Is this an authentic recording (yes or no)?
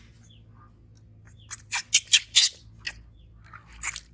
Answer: yes